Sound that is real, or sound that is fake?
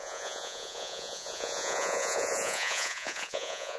fake